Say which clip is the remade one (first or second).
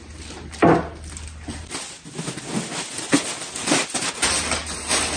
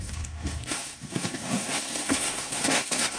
second